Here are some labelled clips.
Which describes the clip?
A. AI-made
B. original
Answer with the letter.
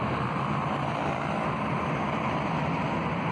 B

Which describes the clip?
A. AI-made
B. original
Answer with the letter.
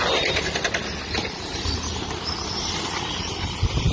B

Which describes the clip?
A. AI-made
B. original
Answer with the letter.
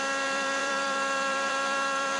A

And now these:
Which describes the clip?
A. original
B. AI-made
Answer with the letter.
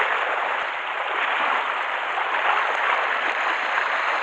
A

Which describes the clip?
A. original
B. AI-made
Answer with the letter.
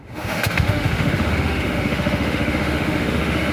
B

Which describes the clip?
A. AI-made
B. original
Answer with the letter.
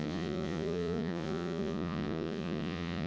A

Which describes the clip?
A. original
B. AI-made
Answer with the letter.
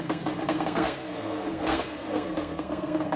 B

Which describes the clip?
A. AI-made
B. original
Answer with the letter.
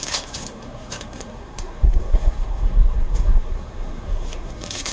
A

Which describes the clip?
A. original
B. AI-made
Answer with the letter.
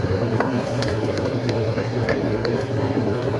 B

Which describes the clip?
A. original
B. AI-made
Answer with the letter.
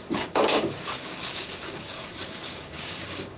B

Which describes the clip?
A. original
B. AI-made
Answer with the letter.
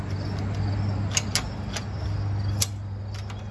A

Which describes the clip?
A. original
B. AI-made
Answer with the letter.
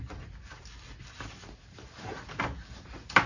A